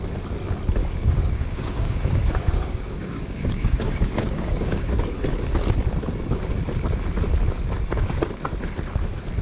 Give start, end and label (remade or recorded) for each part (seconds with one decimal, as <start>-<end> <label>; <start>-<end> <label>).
0.0-0.8 recorded; 0.8-4.9 remade; 4.9-9.4 recorded